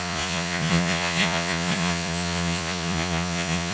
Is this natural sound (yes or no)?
no